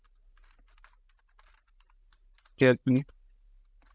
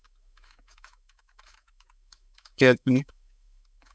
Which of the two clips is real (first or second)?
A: first